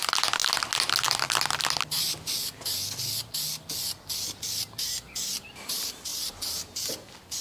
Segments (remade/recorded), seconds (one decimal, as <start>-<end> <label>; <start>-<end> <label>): 0.0-7.4 recorded